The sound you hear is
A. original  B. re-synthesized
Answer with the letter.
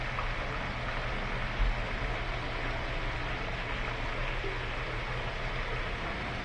A